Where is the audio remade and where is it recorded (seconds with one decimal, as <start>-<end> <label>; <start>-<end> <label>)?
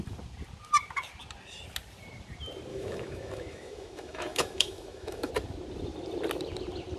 0.0-2.7 recorded; 2.7-5.3 remade; 5.3-7.0 recorded